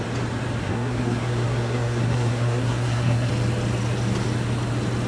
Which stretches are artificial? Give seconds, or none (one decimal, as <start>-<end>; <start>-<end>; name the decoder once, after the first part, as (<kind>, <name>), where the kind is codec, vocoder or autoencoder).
0.6-3.3 (codec, SNAC)